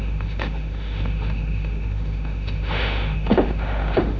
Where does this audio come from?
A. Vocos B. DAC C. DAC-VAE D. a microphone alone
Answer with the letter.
C